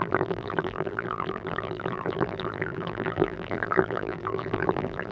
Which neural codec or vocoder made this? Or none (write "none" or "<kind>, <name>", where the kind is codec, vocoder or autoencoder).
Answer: vocoder, BigVGAN v2